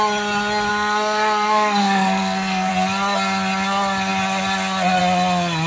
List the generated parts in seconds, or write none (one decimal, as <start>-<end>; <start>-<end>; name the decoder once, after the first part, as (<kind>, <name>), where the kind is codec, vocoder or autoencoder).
0.7-2.7 (codec, SNAC)